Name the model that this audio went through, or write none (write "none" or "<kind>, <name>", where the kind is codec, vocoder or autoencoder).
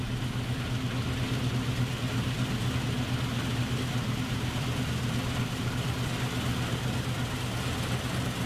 none